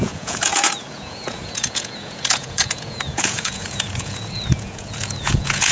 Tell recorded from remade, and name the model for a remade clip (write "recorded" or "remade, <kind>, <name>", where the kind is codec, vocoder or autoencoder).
remade, vocoder, Vocos